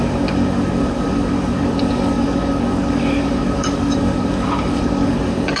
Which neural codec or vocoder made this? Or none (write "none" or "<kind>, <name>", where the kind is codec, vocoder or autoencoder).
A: codec, DAC